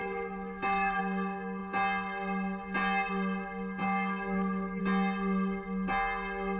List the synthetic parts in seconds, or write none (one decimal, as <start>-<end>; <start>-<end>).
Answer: 0.0-1.0; 3.8-4.8